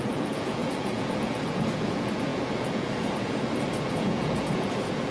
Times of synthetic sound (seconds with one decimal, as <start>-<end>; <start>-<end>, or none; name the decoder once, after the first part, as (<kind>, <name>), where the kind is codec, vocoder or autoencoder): 0.0-5.1 (vocoder, Vocos)